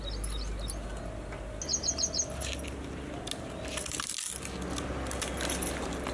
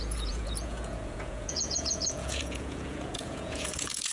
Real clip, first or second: first